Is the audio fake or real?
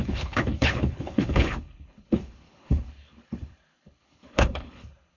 fake